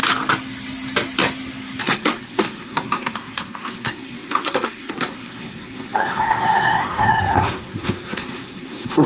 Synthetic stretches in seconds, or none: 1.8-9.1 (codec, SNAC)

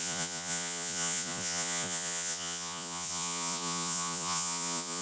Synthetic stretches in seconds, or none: 0.0-5.0 (vocoder, Vocos)

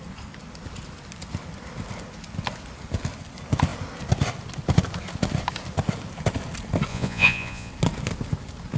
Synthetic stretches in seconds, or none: 6.9-7.7 (vocoder, Vocos)

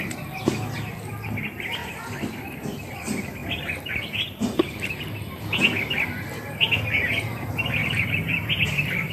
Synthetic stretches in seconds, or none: 3.4-5.6 (vocoder, BigVGAN v2); 7.8-8.6

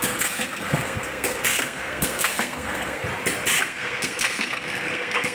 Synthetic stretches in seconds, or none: 0.0-3.0 (codec, SNAC); 3.6-5.3

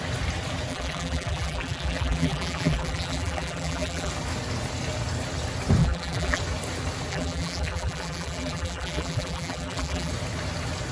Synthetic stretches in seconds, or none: 0.7-4.1 (vocoder, BigVGAN v2); 5.8-6.4; 7.1-10.1